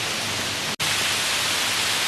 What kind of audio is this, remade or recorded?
recorded